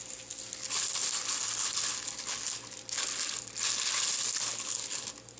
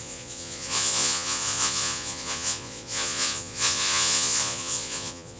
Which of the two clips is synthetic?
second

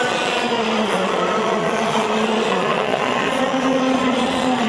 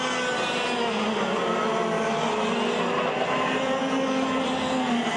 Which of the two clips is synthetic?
first